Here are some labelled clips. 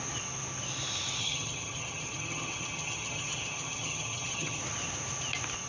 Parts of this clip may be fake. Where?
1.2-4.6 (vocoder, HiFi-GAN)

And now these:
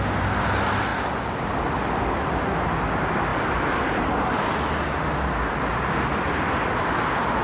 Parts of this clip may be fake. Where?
3.3-4.1 (vocoder, BigVGAN v2)

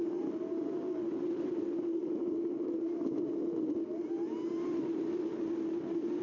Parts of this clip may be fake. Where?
none

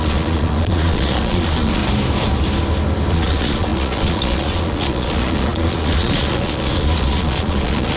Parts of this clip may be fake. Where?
0.0-1.8 (vocoder, Vocos); 3.1-8.0

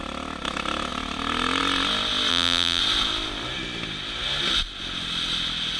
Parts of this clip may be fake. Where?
2.3-2.8 (vocoder, BigVGAN v2)

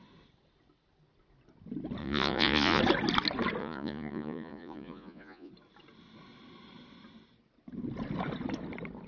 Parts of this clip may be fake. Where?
2.0-2.8 (vocoder, Vocos); 3.6-5.5

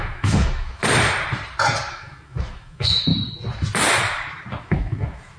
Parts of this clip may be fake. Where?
0.0-0.8 (autoencoder, DAC-VAE); 1.9-3.1; 4.6-5.4